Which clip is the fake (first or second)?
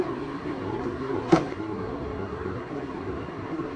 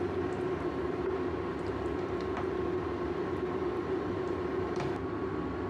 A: first